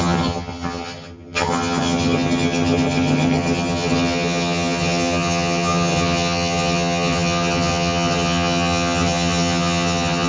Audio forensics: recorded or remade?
remade